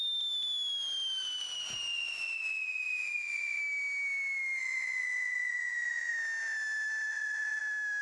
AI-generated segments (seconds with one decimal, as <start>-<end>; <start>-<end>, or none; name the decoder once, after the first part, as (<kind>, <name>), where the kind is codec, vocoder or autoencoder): 1.9-3.6 (vocoder, Vocos); 4.6-6.1; 7.1-7.6